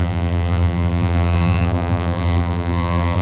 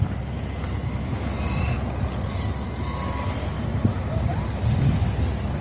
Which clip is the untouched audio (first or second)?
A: second